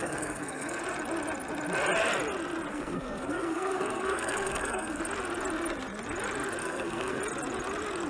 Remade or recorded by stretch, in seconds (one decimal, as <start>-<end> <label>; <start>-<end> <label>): 0.0-0.8 remade; 0.8-2.7 recorded; 2.7-5.0 remade; 5.0-6.6 recorded; 6.6-7.2 remade; 7.2-8.1 recorded